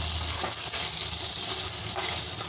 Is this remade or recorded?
recorded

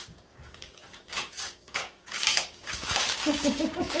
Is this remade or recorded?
remade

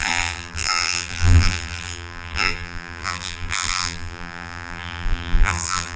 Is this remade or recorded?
remade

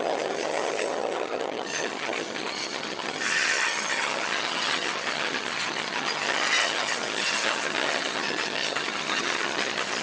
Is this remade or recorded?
remade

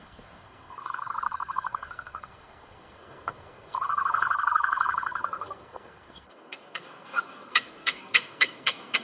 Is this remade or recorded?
remade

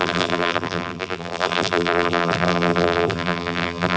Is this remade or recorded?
remade